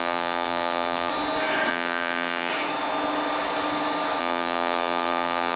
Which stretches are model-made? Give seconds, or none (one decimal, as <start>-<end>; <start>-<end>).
0.0-1.1; 1.7-2.5; 4.2-5.6